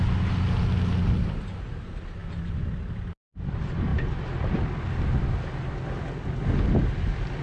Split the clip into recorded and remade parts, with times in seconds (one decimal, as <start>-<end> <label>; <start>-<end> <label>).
0.0-7.4 recorded